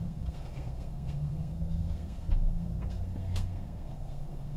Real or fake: fake